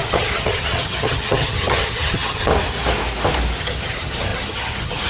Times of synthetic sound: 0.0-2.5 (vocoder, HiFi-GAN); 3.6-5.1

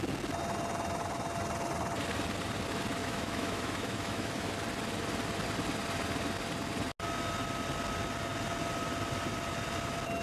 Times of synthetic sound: 3.0-4.5 (autoencoder, DAC-VAE)

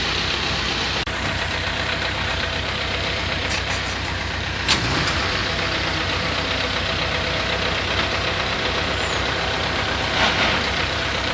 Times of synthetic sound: 0.0-5.4 (vocoder, BigVGAN v2); 8.1-11.3

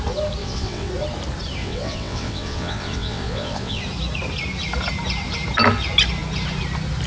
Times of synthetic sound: 0.4-0.9 (vocoder, WaveNeXt); 1.6-3.8

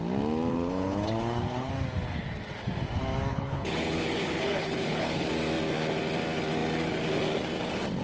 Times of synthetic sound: 0.5-1.7 (codec, HILCodec); 3.3-5.3

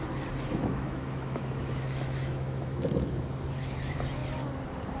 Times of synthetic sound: 0.5-3.5 (autoencoder, DAC-VAE)

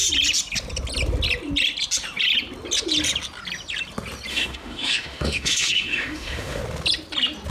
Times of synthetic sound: 4.3-6.6 (autoencoder, DAC-VAE)